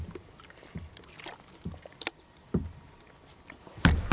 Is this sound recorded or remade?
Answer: recorded